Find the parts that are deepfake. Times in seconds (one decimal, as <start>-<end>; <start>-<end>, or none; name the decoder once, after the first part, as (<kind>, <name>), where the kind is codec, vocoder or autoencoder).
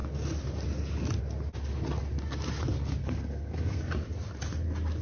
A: 3.0-3.8 (codec, SNAC)